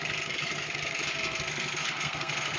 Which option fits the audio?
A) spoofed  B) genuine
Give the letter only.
A